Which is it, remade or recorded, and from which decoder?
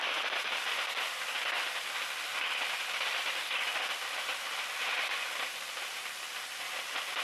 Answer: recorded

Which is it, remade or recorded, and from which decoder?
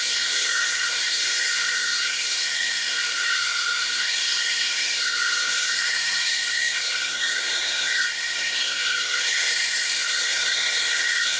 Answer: remade, codec, SNAC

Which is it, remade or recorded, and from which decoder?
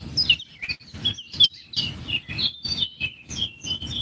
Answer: recorded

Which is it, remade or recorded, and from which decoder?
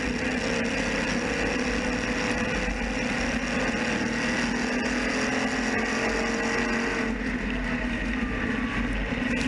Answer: recorded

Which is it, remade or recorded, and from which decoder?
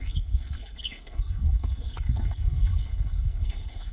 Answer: remade, codec, SNAC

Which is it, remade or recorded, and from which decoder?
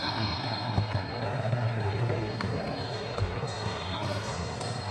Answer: remade, codec, SNAC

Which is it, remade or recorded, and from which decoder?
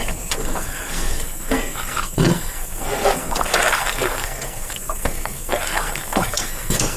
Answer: remade, codec, SNAC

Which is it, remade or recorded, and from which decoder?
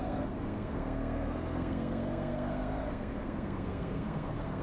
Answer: remade, codec, SNAC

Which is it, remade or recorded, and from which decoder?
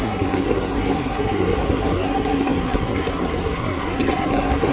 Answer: remade, codec, SNAC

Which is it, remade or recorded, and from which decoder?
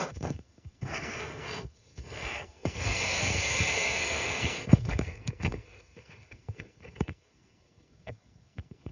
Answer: remade, codec, SNAC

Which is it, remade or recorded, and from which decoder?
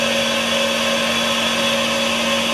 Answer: recorded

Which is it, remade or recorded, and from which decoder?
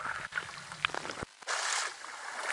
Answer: recorded